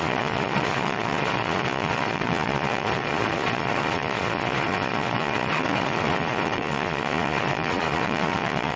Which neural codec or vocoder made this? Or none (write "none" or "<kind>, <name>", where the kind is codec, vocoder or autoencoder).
vocoder, Vocos